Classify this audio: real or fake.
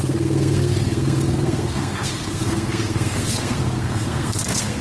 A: fake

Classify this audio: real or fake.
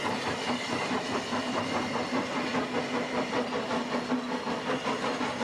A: real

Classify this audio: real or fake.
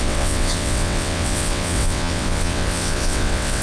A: fake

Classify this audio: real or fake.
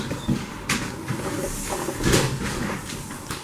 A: fake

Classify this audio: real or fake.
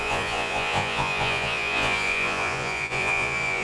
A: fake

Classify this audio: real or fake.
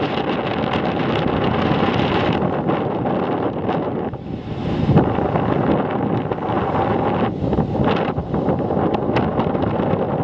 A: real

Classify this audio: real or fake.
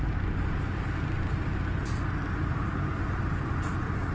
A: real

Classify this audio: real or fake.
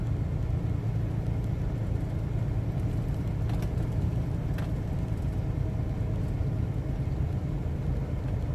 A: real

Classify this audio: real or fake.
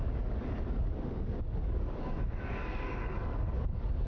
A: fake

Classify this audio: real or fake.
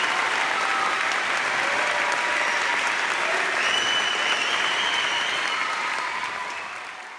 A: real